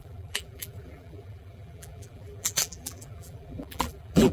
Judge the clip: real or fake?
fake